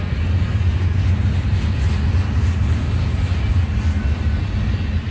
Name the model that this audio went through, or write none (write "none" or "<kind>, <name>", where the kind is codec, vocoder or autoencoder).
none